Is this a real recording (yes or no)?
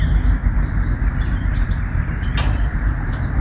no